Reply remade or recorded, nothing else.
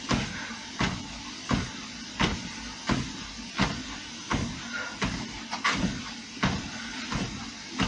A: recorded